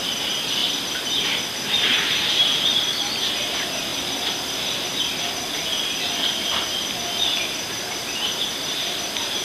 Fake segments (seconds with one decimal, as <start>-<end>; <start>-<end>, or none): 3.9-5.0; 7.4-8.9